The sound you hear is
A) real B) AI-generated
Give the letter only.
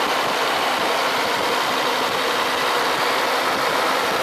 A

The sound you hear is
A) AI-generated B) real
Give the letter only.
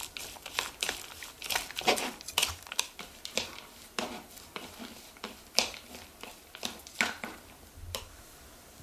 B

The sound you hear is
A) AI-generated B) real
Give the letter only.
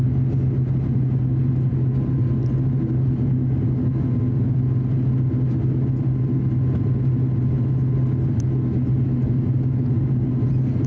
B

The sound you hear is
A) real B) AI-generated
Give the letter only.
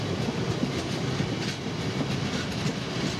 A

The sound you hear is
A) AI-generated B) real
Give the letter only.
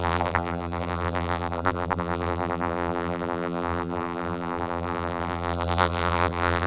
A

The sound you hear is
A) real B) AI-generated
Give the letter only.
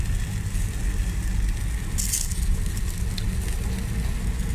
A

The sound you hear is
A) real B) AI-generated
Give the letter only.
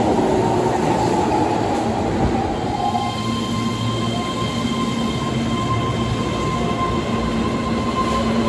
A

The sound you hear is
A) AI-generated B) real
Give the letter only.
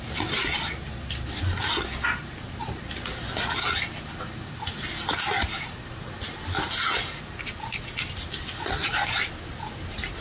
B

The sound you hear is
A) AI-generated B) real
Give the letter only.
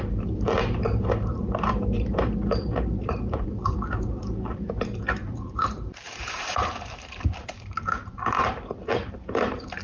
A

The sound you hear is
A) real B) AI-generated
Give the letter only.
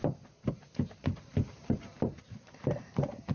B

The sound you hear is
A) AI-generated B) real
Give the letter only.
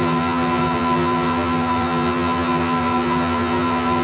A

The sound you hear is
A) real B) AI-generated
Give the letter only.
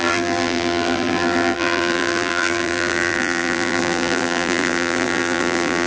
B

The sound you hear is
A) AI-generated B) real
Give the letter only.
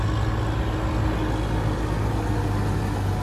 B